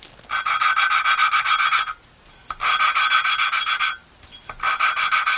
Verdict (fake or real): real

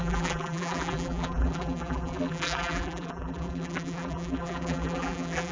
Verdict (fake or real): fake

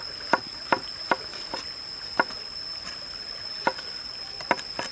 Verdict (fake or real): real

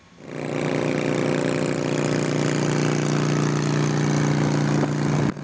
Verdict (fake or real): real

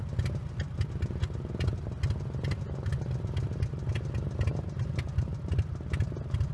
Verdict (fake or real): real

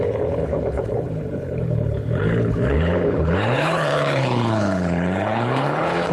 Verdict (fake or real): fake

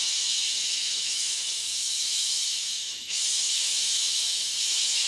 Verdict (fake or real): fake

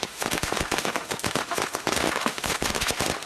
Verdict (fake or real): fake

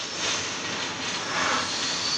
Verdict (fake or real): real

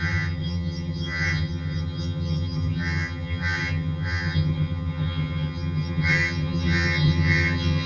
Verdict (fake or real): fake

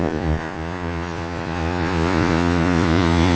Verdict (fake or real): fake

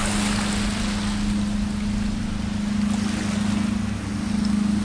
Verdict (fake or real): real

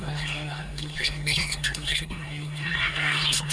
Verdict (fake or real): fake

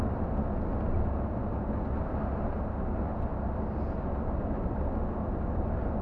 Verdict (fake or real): real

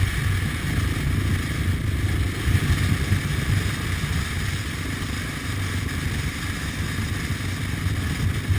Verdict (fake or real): real